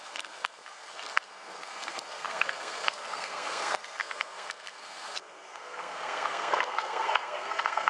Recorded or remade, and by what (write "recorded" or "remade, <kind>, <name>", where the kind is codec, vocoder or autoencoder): remade, codec, SNAC